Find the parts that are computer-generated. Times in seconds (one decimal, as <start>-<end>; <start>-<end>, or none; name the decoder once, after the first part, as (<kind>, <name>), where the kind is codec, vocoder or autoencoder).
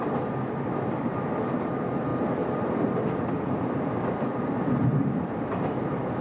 none